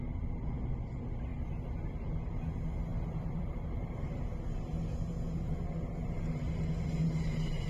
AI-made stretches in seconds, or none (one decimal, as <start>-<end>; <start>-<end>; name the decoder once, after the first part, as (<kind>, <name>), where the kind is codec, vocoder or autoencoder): 2.9-4.2 (vocoder, BigVGAN v2)